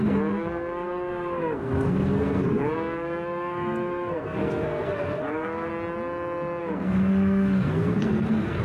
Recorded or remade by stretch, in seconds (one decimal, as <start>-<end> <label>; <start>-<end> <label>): 0.0-5.7 remade; 5.7-6.6 recorded; 6.6-8.6 remade